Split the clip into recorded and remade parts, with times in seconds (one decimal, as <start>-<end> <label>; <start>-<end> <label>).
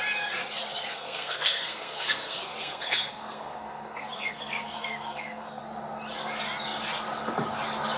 0.0-0.8 recorded; 0.8-5.6 remade; 5.6-8.0 recorded